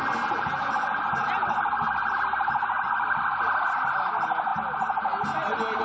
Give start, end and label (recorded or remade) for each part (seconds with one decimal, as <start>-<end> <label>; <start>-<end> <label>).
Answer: 0.0-5.8 recorded